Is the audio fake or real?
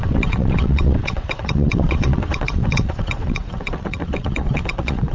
fake